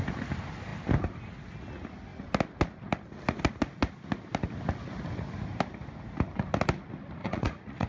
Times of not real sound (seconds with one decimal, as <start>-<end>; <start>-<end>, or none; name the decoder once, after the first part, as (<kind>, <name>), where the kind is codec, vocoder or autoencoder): 7.2-7.9 (vocoder, Vocos)